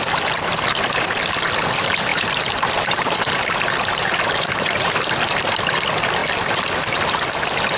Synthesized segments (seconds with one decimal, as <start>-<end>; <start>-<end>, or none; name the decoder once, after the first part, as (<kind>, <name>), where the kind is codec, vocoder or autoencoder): 2.1-4.9 (vocoder, BigVGAN v2)